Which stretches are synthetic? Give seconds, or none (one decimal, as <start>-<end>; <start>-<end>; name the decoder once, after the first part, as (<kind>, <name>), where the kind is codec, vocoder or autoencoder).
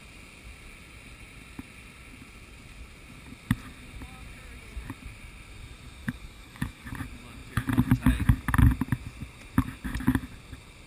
6.0-6.9 (codec, DAC)